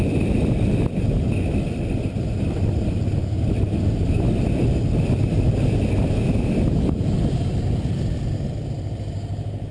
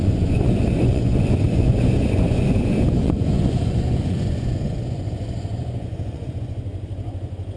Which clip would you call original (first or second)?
first